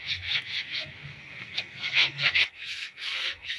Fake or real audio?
fake